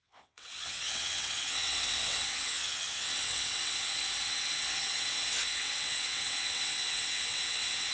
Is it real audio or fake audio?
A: fake